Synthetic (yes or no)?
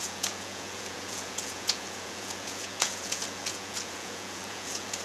yes